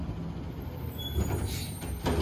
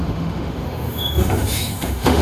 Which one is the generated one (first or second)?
second